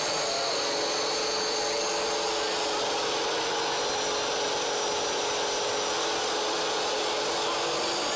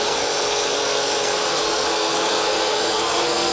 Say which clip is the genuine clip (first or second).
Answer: first